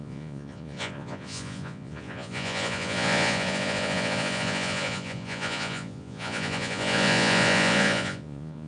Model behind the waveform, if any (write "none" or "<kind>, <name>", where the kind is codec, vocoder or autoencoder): vocoder, Vocos